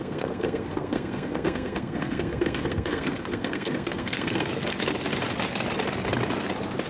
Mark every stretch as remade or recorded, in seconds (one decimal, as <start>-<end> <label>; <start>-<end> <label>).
0.0-4.5 remade; 4.5-6.9 recorded